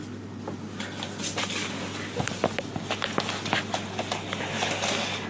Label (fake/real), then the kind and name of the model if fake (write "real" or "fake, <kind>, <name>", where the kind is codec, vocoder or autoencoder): real